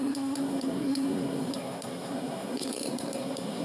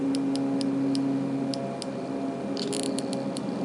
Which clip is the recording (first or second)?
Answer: second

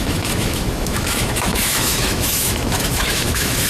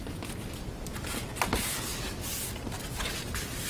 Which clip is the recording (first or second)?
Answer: second